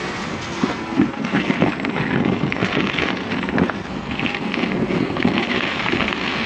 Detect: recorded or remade remade